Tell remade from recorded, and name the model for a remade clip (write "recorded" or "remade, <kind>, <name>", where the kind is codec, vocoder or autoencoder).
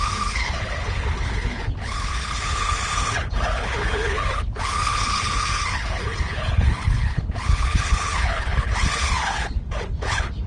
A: remade, codec, HILCodec